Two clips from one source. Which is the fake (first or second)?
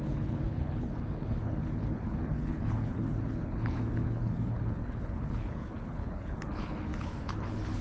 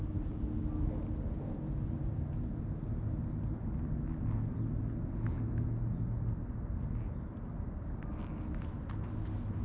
first